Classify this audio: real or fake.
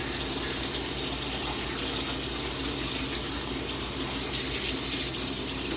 real